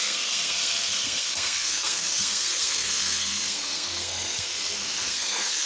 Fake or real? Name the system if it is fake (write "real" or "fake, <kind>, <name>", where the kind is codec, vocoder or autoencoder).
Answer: fake, codec, SNAC